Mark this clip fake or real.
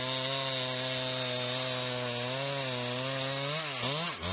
real